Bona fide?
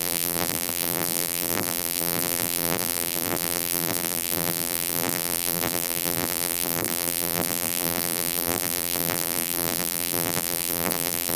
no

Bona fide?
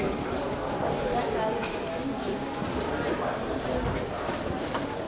yes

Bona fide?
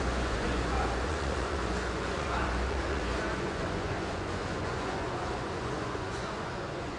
no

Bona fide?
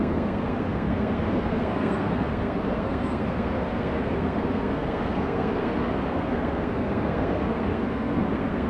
no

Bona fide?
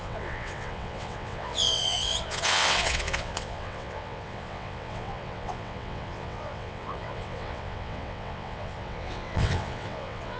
no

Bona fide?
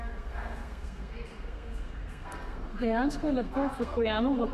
no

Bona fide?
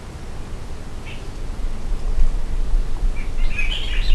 yes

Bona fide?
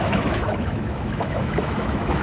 no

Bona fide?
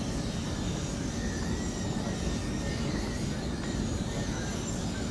yes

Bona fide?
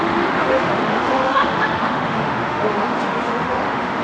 no